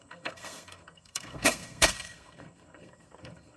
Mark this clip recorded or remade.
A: remade